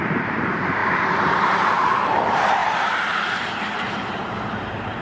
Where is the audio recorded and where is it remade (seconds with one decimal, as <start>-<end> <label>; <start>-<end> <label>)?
0.0-0.8 remade; 0.8-1.6 recorded; 1.6-5.0 remade